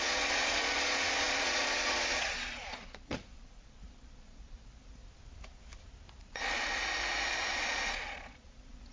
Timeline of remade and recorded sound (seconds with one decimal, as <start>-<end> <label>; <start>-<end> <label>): 0.0-5.0 remade; 5.0-6.2 recorded; 6.2-6.8 remade; 6.8-7.5 recorded; 7.5-8.9 remade